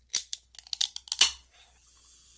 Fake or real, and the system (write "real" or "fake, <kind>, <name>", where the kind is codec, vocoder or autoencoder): real